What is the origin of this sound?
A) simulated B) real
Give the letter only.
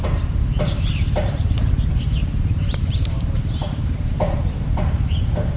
A